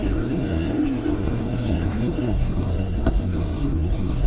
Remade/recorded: remade